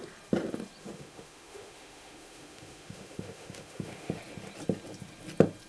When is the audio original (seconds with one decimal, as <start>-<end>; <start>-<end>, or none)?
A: 0.0-0.8; 4.2-5.7